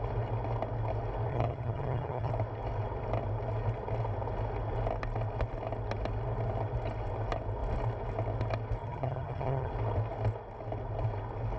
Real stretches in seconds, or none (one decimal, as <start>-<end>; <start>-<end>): 0.0-1.3; 2.3-8.8; 9.7-11.6